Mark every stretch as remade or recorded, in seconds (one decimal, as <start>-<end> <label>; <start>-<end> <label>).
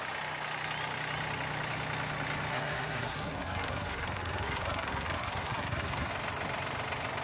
0.0-2.5 recorded; 2.5-6.1 remade; 6.1-7.2 recorded